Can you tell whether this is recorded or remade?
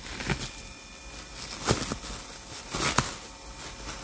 recorded